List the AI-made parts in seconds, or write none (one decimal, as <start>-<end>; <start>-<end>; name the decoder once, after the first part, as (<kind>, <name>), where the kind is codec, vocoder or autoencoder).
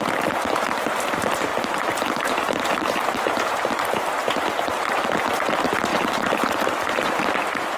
1.5-3.7 (vocoder, BigVGAN v2); 5.9-7.3